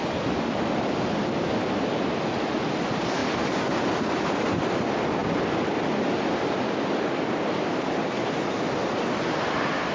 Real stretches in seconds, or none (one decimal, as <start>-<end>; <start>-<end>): 0.0-9.9